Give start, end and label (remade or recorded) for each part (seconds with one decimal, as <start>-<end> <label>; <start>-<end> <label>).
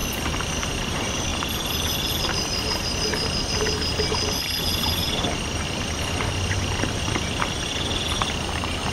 0.0-0.6 recorded; 0.6-1.3 remade; 1.3-2.2 recorded; 2.2-8.9 remade